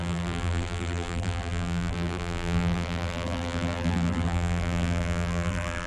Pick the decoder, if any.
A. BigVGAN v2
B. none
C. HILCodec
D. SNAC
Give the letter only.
A